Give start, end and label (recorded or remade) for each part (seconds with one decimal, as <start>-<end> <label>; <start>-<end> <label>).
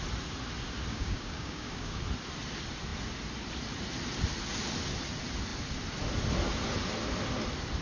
0.0-0.9 recorded; 0.9-2.0 remade; 2.0-7.8 recorded